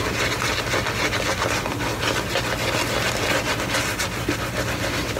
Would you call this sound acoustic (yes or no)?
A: yes